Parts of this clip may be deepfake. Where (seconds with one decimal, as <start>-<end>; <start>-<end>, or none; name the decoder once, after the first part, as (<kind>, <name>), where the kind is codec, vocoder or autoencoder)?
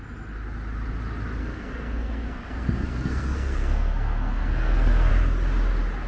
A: 1.4-5.1 (codec, SNAC)